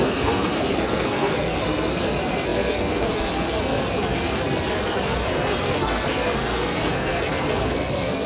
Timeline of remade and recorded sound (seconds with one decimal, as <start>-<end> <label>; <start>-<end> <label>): 0.0-8.3 remade